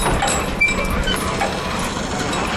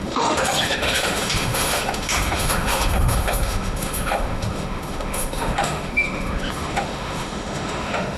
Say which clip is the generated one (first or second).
second